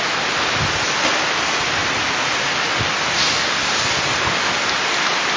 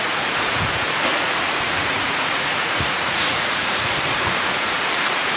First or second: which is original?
first